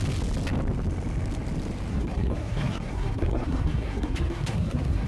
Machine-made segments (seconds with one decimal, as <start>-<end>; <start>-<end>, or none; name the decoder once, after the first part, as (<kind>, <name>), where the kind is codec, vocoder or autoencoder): 1.9-5.1 (codec, SNAC)